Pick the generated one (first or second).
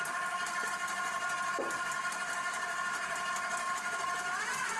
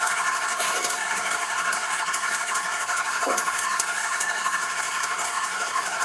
second